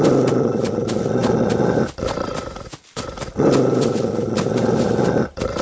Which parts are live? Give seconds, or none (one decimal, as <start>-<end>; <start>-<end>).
0.0-5.6